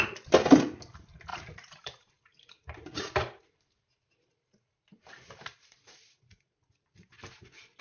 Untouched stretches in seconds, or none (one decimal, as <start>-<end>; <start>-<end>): 0.0-1.3; 6.0-7.8